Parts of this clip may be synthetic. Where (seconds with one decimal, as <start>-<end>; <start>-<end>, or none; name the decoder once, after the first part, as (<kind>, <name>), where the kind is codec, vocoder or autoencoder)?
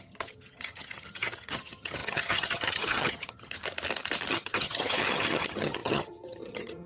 0.0-3.6 (vocoder, HiFi-GAN); 4.3-6.9